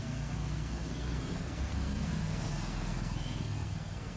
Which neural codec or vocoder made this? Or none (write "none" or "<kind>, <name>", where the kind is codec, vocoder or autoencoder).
codec, SNAC